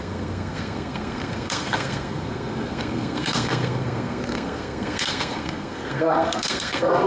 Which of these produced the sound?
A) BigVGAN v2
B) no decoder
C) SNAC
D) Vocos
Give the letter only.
C